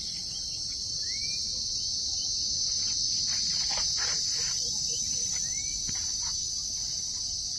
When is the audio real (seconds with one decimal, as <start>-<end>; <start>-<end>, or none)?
0.0-1.2; 5.8-6.4